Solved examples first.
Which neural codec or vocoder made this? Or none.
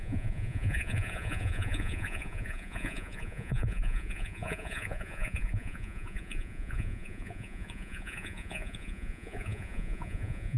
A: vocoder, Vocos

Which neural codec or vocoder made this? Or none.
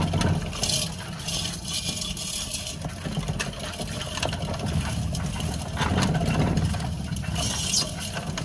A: none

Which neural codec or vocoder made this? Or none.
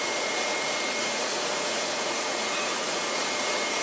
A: vocoder, Vocos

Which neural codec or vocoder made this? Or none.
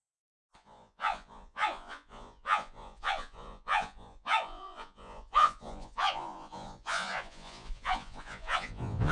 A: vocoder, Vocos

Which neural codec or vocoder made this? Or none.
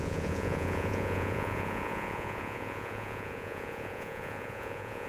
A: vocoder, Vocos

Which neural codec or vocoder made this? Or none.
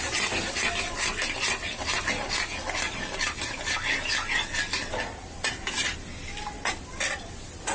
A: none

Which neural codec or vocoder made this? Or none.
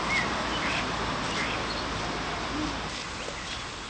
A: none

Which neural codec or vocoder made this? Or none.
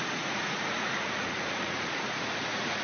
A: vocoder, Vocos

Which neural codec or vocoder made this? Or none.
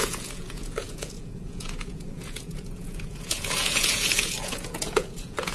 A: vocoder, Vocos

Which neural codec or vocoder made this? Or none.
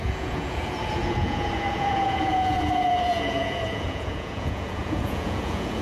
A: vocoder, Vocos